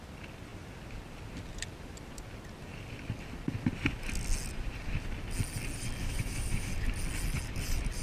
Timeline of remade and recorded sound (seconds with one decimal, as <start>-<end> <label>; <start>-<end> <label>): 0.0-6.0 recorded; 6.0-6.7 remade; 6.7-8.0 recorded